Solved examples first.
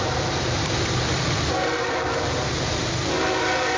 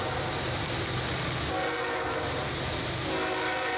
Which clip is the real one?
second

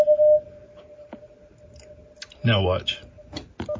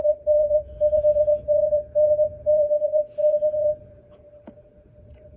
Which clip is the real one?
first